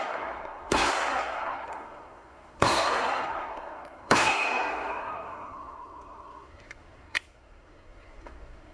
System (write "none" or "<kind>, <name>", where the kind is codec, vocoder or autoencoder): codec, SNAC